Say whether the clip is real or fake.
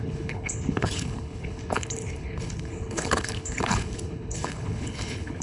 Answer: fake